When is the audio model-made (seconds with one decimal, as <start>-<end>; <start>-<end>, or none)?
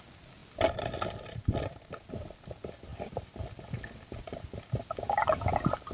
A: none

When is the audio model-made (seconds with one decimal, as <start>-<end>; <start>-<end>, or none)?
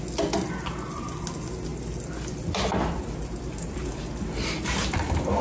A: none